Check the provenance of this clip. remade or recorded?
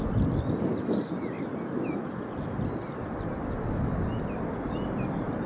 recorded